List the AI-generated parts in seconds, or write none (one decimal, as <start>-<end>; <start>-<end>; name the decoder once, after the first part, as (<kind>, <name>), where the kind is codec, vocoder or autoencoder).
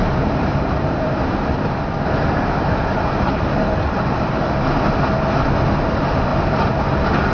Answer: 0.0-4.4 (vocoder, BigVGAN v2); 6.3-6.8